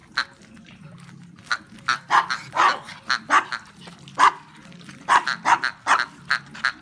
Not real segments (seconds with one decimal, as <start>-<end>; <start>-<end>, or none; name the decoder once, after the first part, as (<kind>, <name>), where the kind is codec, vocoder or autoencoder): none